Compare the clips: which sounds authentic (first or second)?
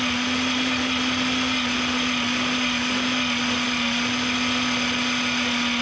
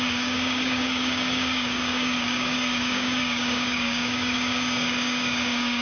first